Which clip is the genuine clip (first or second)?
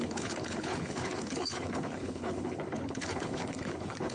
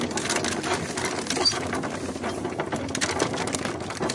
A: second